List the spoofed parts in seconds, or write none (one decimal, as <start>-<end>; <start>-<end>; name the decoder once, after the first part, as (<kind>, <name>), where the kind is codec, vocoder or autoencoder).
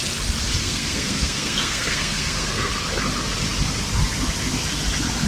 0.6-2.7 (codec, SNAC)